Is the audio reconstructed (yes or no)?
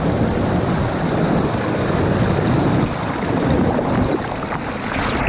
no